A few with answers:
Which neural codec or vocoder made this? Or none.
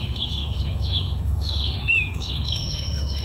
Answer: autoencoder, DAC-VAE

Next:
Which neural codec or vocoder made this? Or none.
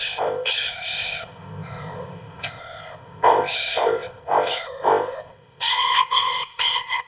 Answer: codec, ZipCodec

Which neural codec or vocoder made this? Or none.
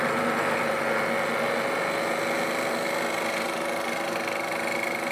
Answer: none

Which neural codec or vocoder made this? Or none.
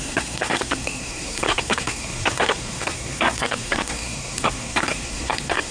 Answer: codec, SNAC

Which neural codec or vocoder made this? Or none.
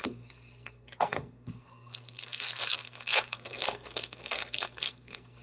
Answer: codec, SNAC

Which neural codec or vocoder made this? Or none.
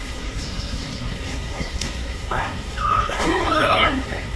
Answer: codec, SNAC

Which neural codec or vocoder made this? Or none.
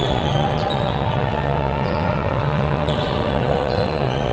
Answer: vocoder, WaveNeXt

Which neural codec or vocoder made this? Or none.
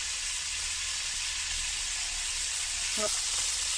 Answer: vocoder, Vocos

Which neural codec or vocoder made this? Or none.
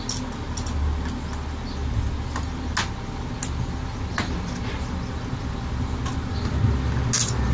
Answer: none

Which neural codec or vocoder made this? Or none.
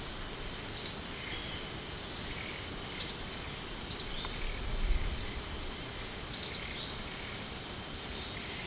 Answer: none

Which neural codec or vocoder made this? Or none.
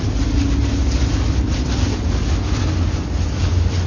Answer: none